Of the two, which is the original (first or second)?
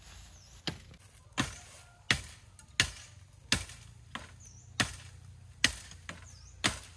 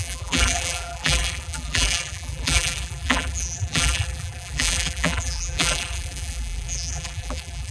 first